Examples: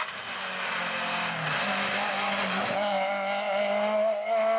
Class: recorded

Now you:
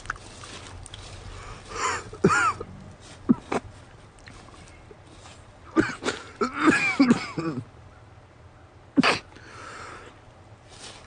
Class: recorded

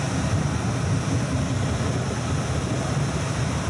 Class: recorded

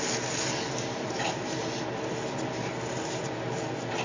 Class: recorded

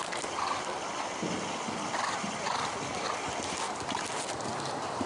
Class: recorded